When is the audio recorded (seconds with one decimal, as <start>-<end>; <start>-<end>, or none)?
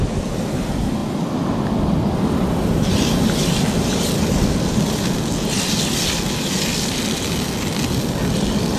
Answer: 0.0-8.8